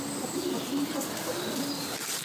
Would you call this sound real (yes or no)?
yes